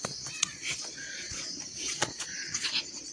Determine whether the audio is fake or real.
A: fake